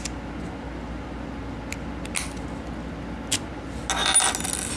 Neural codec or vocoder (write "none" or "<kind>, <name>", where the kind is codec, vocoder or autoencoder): none